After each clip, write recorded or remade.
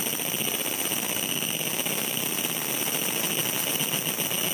recorded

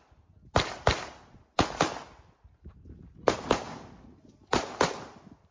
recorded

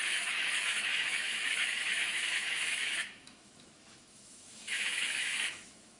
remade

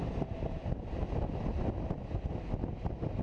recorded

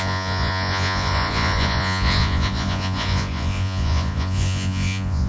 remade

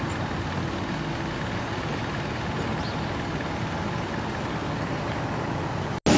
recorded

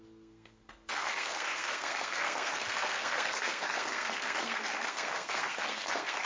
remade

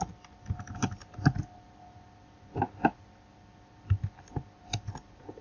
recorded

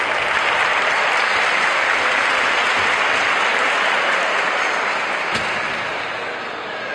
recorded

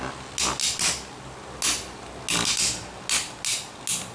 recorded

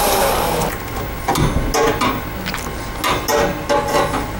recorded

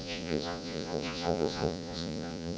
remade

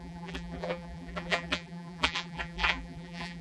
remade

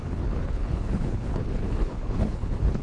remade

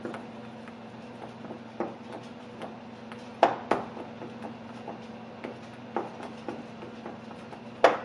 recorded